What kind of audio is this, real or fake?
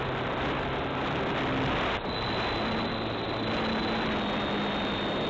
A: real